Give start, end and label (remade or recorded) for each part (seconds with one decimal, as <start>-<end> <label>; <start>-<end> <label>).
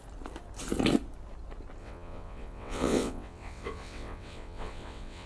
0.0-1.8 recorded; 1.8-5.3 remade